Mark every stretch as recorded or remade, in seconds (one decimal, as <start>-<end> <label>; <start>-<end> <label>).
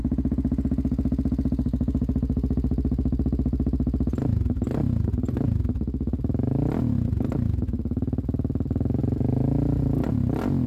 0.0-10.7 recorded